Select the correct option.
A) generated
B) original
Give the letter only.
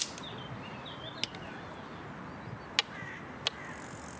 B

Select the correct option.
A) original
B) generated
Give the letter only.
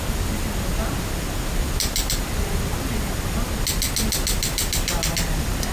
A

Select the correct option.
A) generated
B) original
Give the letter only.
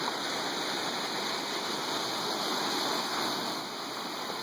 B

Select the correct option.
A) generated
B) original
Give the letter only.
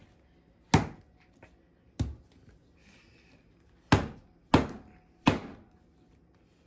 B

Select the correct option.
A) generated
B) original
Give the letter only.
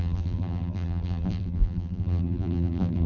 A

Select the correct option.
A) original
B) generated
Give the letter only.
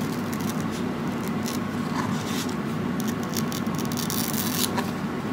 A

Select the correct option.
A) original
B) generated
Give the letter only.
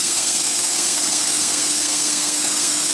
B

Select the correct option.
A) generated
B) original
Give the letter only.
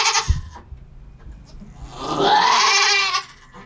B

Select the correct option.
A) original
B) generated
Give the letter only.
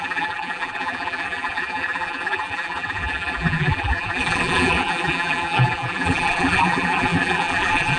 B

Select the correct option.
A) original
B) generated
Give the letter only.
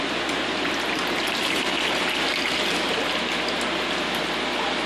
A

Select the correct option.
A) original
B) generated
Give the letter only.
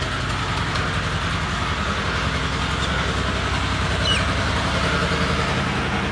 A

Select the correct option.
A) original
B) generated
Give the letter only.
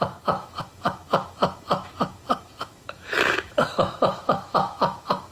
B